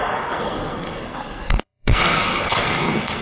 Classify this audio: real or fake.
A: fake